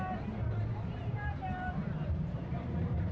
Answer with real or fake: fake